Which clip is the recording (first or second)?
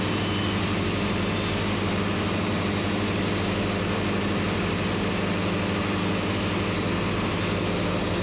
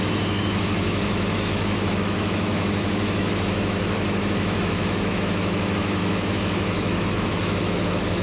first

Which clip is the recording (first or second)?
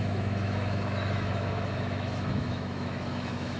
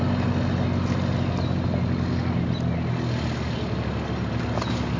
second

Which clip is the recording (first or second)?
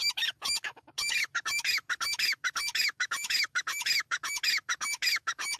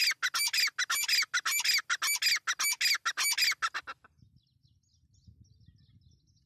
second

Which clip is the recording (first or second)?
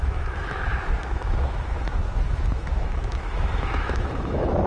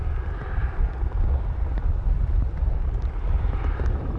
second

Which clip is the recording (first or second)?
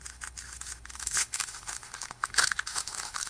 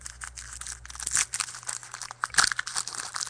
second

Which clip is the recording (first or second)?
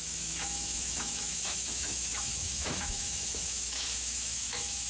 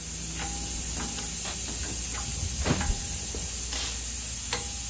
second